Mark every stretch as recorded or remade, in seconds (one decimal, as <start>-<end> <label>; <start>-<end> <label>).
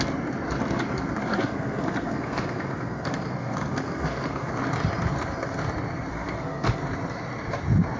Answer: 0.0-1.2 recorded; 1.2-4.5 remade; 4.5-6.1 recorded; 6.1-6.8 remade; 6.8-8.0 recorded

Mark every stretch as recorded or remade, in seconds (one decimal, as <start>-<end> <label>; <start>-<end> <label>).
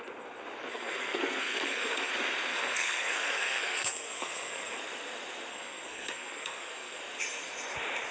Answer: 0.0-0.7 recorded; 0.7-2.1 remade; 2.1-2.5 recorded; 2.5-4.8 remade; 4.8-5.5 recorded; 5.5-7.0 remade; 7.0-8.1 recorded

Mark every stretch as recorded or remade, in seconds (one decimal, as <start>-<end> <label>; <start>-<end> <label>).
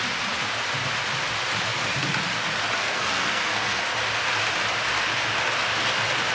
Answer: 0.0-2.8 recorded; 2.8-3.8 remade; 3.8-6.3 recorded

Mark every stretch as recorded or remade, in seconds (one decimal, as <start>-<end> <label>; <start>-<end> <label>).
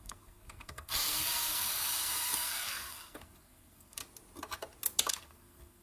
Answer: 0.0-4.0 remade; 4.0-5.1 recorded; 5.1-5.8 remade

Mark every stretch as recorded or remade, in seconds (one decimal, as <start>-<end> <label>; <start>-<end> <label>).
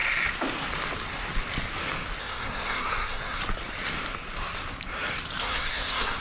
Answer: 0.0-2.2 recorded; 2.2-3.4 remade; 3.4-5.4 recorded; 5.4-6.2 remade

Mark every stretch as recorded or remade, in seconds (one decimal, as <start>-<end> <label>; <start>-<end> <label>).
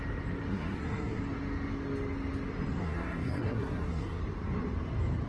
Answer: 0.0-0.5 recorded; 0.5-1.2 remade; 1.2-2.8 recorded; 2.8-4.2 remade; 4.2-5.3 recorded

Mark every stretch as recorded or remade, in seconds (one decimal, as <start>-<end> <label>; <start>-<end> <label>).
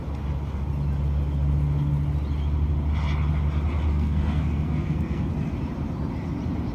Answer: 0.0-3.9 recorded; 3.9-5.3 remade; 5.3-6.7 recorded